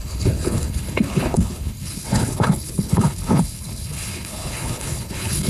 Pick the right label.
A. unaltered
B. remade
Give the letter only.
B